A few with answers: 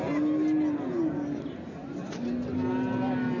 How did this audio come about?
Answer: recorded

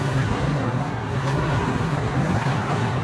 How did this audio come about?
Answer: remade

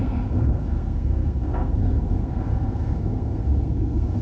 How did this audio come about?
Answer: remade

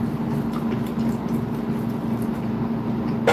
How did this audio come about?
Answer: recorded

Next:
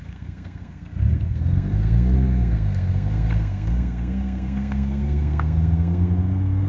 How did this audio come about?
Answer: remade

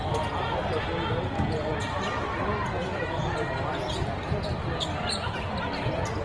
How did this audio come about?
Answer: recorded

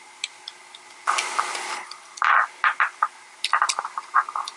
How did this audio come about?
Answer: recorded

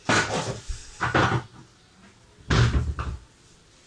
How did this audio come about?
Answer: recorded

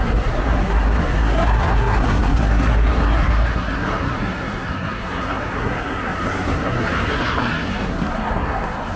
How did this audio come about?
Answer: remade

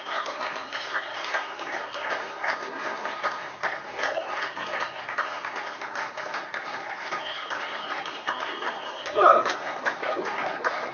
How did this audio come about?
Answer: remade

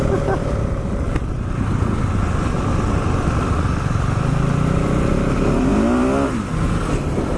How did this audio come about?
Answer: recorded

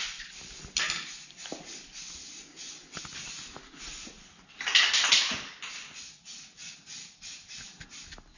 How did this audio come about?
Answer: recorded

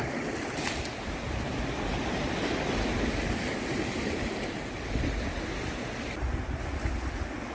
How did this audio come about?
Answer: recorded